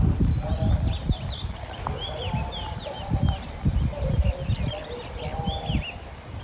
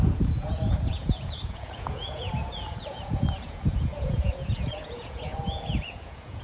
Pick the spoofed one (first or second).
second